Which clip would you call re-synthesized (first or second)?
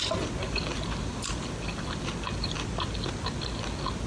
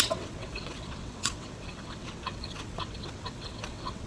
second